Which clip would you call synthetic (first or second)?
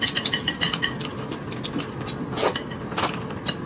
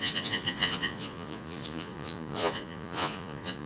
second